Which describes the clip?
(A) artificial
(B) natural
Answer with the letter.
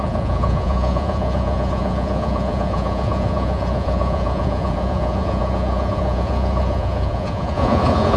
A